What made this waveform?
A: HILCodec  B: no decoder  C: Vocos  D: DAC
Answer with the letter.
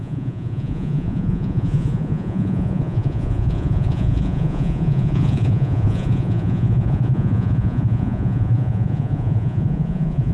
C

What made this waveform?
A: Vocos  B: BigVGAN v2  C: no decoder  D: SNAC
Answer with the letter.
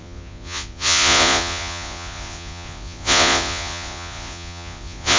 A